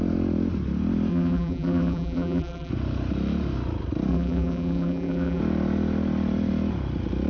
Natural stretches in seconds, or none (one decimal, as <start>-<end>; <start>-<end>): 0.0-1.1; 2.7-4.1; 5.4-7.3